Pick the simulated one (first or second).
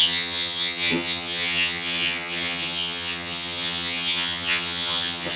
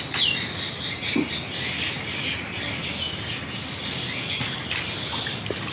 first